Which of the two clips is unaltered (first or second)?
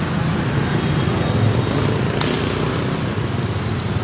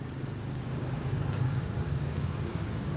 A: first